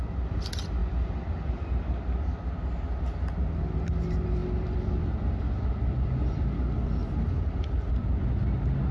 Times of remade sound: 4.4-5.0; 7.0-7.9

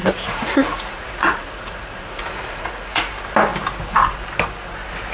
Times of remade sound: 0.0-3.1

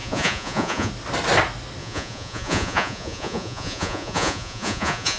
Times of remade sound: 0.0-0.9; 1.8-5.2

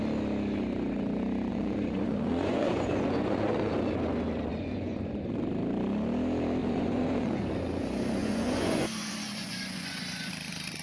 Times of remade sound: 1.5-3.7; 4.5-5.4; 6.6-7.5; 8.2-10.3

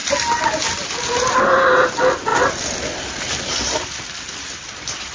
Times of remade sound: 1.3-5.1

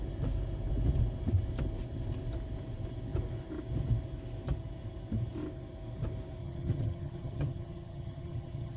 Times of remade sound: 6.4-8.8

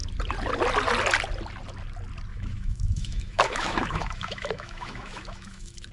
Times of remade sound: 2.3-5.9